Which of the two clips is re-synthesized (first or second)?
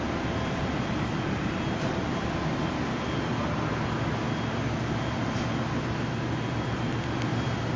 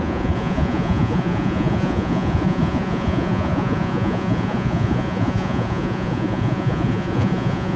second